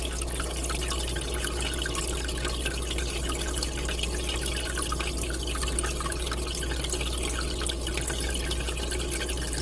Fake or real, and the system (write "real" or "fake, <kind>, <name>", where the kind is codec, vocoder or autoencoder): real